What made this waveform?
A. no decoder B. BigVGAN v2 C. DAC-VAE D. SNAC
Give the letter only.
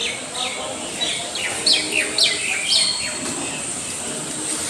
A